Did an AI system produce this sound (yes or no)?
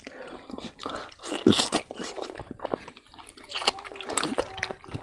no